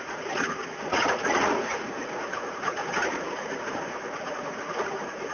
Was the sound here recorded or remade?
remade